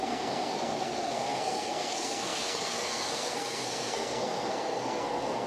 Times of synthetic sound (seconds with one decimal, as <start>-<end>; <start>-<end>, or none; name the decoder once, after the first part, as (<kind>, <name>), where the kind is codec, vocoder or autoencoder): 0.0-5.5 (codec, SNAC)

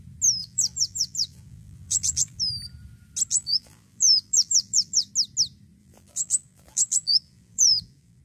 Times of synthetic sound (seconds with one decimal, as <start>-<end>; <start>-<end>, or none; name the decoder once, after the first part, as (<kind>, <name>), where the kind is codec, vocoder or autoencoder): 0.4-2.5 (vocoder, BigVGAN v2); 3.3-5.1; 5.8-8.2

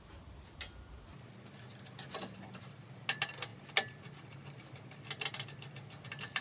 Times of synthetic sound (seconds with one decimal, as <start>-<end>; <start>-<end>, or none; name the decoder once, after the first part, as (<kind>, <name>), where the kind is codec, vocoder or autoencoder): none

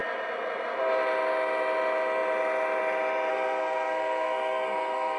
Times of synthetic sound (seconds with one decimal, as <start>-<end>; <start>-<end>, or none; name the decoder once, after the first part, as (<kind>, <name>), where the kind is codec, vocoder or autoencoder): 3.3-5.2 (codec, SNAC)

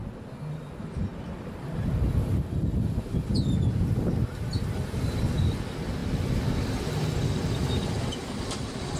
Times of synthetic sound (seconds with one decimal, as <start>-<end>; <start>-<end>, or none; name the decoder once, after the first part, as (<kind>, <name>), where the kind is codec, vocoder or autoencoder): none

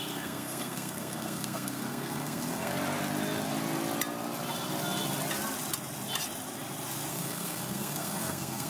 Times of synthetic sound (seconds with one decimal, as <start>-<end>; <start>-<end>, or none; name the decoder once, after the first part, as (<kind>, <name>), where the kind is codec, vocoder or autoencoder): 0.0-2.7 (codec, SNAC); 7.1-8.7